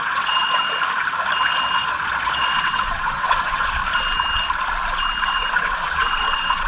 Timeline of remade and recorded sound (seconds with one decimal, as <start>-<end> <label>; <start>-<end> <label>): 0.0-0.6 remade; 0.6-1.7 recorded; 1.7-3.8 remade; 3.8-5.2 recorded; 5.2-6.7 remade